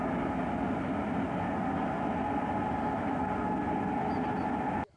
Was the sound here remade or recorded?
recorded